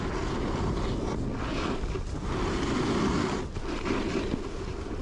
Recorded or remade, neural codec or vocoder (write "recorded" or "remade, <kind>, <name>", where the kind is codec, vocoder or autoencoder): recorded